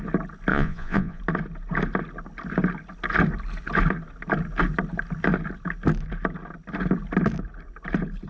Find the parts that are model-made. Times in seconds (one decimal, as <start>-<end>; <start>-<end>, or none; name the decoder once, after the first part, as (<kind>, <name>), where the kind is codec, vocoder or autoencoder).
0.5-1.2 (vocoder, Vocos)